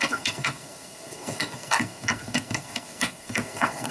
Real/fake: fake